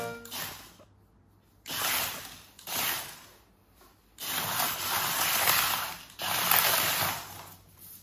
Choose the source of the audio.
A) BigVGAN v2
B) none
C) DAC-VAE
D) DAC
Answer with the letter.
B